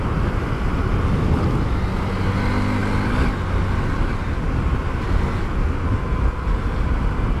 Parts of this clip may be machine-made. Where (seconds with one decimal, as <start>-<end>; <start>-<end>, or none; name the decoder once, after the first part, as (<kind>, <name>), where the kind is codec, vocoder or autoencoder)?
none